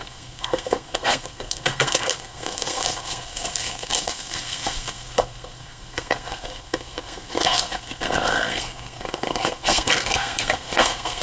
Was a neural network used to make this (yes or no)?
yes